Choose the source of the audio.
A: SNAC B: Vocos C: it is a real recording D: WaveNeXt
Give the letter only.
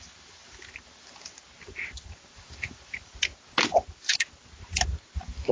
C